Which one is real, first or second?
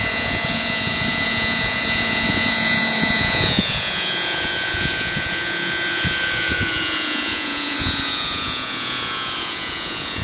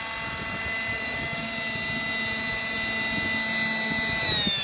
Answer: second